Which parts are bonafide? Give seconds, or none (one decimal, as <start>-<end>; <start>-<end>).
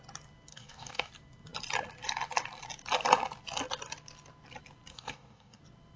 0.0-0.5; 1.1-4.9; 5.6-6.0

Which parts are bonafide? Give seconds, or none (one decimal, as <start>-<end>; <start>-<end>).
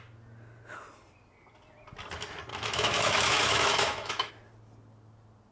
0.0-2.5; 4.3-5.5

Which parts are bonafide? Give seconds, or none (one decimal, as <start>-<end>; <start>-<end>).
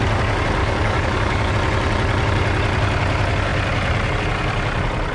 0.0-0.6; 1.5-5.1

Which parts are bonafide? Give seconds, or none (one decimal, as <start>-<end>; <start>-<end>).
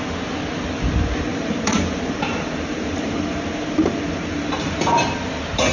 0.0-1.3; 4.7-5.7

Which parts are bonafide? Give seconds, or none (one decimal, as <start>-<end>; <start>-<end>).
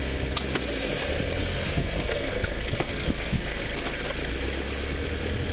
0.0-1.4; 3.6-5.5